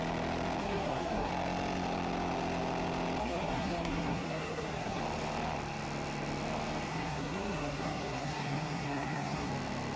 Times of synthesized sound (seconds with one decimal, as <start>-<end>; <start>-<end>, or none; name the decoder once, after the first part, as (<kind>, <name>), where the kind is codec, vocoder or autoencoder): 0.6-1.3 (codec, SNAC); 3.2-5.0; 6.9-9.5